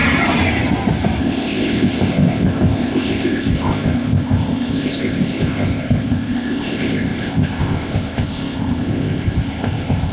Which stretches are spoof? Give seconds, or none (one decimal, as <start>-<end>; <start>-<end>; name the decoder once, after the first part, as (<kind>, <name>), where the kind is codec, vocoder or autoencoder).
1.2-10.1 (codec, ZipCodec)